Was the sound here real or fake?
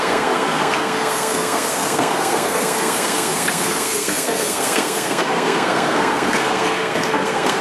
fake